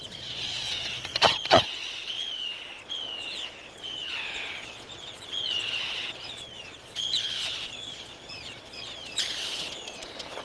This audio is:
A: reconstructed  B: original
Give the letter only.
A